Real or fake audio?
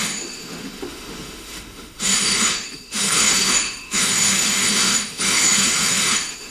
fake